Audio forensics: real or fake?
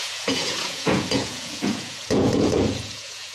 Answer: fake